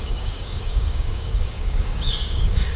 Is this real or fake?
fake